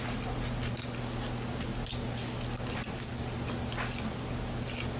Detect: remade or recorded recorded